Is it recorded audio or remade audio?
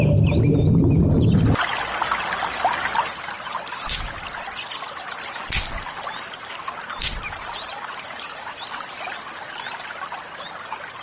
recorded